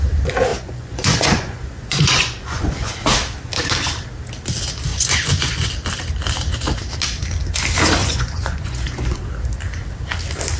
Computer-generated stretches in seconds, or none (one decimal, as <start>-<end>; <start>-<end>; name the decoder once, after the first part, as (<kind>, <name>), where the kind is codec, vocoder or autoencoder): 0.5-2.9 (vocoder, Vocos); 4.9-5.7; 8.0-9.2